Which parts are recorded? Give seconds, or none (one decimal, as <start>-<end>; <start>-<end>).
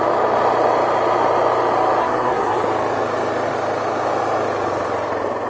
0.0-2.0; 2.6-5.5